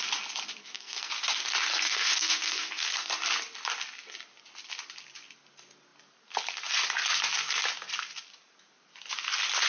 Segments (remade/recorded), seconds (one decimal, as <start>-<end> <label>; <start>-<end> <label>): 0.0-0.6 recorded; 0.6-1.1 remade; 1.1-1.7 recorded; 1.7-3.1 remade; 3.1-9.7 recorded

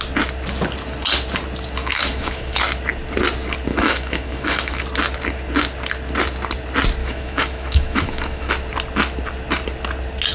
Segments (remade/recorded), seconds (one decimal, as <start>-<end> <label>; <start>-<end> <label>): 0.0-1.8 recorded; 1.8-2.6 remade; 2.6-3.7 recorded; 3.7-4.8 remade; 4.8-7.0 recorded; 7.0-8.5 remade; 8.5-10.3 recorded